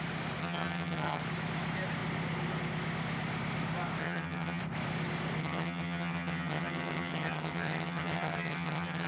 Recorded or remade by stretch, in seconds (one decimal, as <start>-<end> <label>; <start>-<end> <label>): 0.0-0.4 recorded; 0.4-1.2 remade; 1.2-4.0 recorded; 4.0-4.6 remade; 4.6-5.4 recorded; 5.4-9.1 remade